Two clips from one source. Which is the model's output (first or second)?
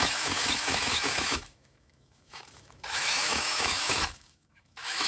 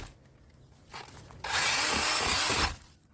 first